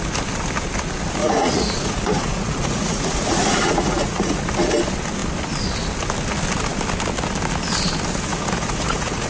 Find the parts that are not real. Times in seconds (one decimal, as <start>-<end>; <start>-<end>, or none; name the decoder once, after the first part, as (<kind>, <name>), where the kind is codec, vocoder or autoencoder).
1.2-4.4 (vocoder, Vocos); 8.3-9.3